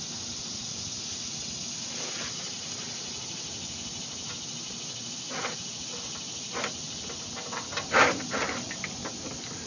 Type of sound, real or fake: real